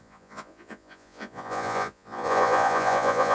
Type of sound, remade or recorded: remade